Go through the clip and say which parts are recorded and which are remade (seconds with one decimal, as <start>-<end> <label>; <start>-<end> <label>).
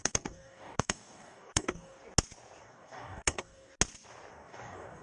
0.0-2.0 remade; 2.0-2.6 recorded; 2.6-3.7 remade; 3.7-4.3 recorded; 4.3-5.0 remade